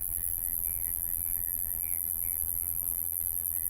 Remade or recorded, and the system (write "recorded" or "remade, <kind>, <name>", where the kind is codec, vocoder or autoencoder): remade, vocoder, BigVGAN v2